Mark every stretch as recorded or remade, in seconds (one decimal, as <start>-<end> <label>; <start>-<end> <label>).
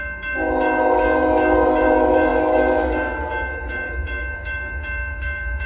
0.0-5.7 remade